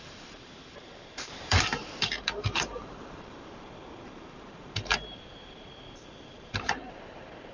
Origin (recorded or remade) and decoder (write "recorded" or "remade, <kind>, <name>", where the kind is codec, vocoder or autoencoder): remade, vocoder, BigVGAN v2